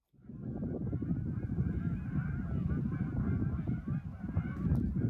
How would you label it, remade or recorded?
recorded